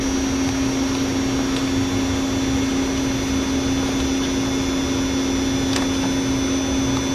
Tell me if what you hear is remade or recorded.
recorded